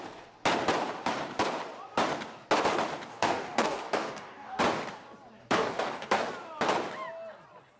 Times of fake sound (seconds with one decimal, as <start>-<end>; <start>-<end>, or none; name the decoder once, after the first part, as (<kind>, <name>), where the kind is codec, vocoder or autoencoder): 3.1-4.6 (codec, DAC); 5.4-6.3